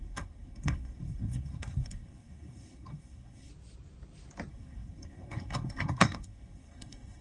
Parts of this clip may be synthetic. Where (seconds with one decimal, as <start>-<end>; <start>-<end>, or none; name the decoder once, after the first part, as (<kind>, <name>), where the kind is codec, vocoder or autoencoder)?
0.0-3.5 (codec, SNAC); 4.5-7.2